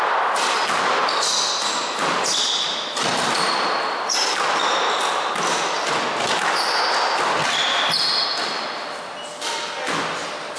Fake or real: real